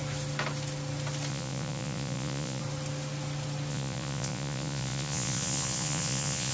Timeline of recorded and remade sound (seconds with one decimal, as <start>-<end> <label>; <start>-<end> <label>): 0.0-1.3 recorded; 1.3-2.6 remade; 2.6-3.7 recorded; 3.7-6.5 remade